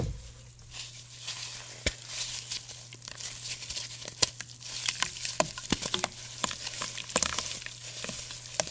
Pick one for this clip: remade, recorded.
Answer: recorded